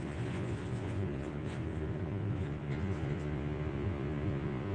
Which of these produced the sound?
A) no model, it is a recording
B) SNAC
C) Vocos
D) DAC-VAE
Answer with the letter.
C